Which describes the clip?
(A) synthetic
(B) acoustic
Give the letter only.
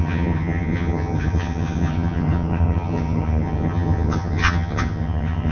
A